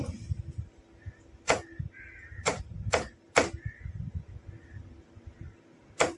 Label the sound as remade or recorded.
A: recorded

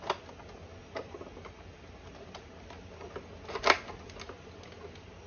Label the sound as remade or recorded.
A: recorded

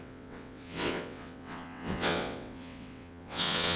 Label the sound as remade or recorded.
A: remade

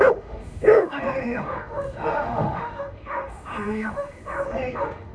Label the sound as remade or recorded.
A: remade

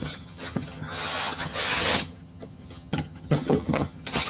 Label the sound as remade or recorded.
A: remade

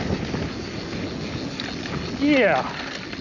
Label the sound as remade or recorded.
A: recorded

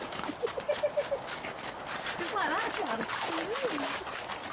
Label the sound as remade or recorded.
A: remade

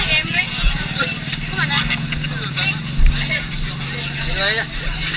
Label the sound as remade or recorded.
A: recorded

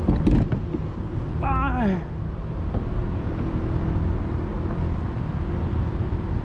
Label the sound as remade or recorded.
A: recorded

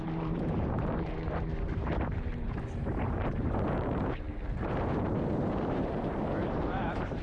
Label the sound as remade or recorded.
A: remade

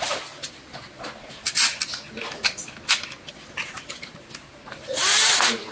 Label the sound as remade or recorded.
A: recorded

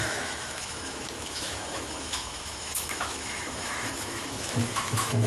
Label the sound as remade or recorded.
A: remade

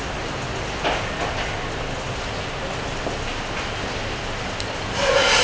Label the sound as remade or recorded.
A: recorded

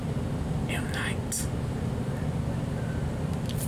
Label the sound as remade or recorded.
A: recorded